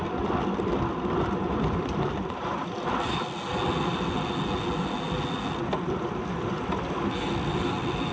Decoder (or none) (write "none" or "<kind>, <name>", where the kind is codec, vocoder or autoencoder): none